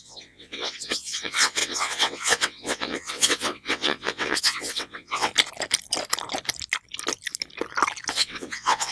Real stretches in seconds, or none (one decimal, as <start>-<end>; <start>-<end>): 5.3-8.1